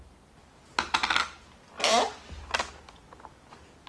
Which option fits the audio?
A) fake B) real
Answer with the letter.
B